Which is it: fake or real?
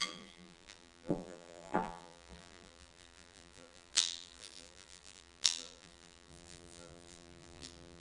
fake